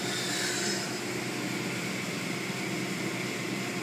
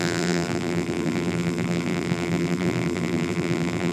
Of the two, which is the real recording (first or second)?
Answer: first